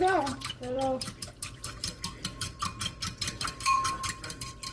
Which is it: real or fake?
fake